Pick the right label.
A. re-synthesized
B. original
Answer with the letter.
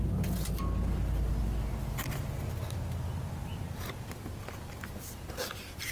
B